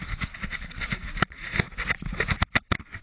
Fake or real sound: real